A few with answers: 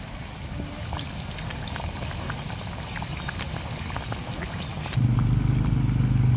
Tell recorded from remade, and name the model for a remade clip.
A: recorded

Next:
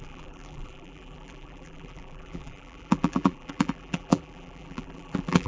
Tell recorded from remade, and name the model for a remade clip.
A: remade, vocoder, BigVGAN v2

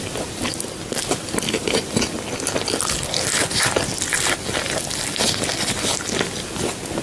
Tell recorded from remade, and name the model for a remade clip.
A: recorded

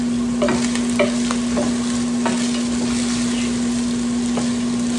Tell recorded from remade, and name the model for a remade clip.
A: recorded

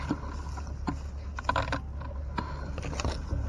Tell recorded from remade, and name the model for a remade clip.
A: recorded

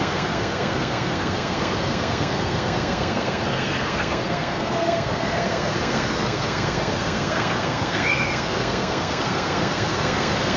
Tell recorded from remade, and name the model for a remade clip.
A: remade, codec, SNAC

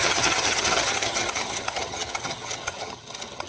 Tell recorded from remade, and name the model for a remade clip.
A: remade, vocoder, HiFi-GAN